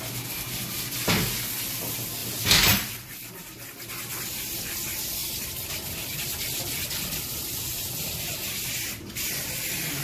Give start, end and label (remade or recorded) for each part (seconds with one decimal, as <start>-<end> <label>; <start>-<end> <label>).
0.0-2.2 recorded; 2.2-3.3 remade; 3.3-5.2 recorded; 5.2-8.7 remade; 8.7-10.0 recorded